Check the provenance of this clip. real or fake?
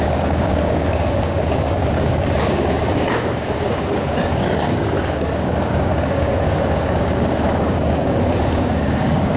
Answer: fake